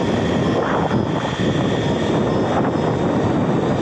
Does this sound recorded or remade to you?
recorded